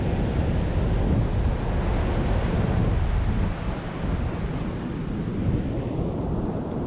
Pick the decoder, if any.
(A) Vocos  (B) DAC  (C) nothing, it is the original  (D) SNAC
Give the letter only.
C